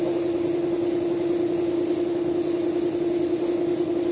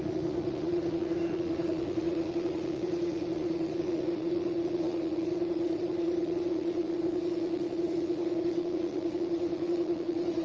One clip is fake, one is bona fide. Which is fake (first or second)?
second